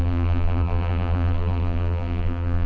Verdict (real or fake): fake